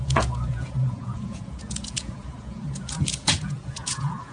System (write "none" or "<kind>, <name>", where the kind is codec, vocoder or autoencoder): vocoder, Vocos